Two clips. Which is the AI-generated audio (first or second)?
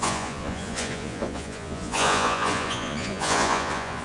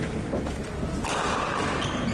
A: first